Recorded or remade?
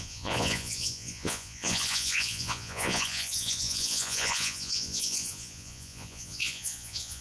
remade